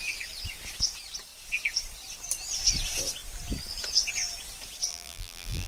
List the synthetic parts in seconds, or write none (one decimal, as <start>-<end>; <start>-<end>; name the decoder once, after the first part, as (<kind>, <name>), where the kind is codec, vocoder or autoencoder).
4.9-5.7 (vocoder, BigVGAN v2)